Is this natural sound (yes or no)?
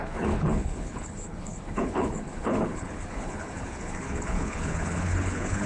no